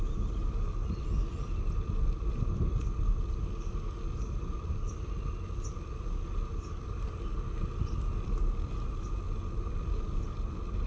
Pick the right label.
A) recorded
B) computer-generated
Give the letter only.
A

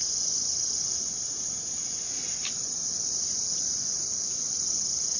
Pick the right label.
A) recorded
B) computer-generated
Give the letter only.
B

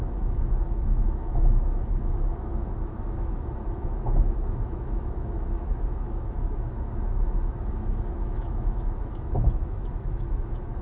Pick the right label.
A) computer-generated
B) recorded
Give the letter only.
A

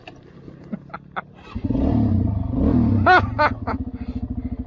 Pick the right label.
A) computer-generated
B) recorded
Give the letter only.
B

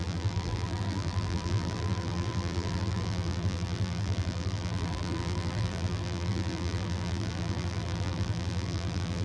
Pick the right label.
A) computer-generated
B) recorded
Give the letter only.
A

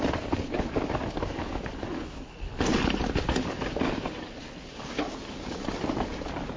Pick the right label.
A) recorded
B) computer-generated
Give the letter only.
A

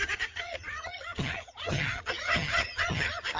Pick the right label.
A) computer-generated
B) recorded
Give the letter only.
A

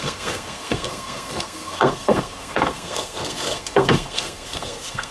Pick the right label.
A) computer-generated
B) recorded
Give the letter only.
A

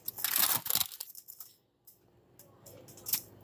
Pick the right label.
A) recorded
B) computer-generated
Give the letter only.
A